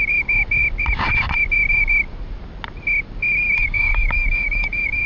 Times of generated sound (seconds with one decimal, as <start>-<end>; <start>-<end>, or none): 3.6-5.1